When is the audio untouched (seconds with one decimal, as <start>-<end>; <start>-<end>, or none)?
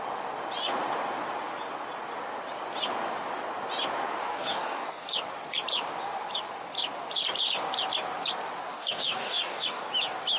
0.0-4.2; 5.1-8.7; 9.8-10.4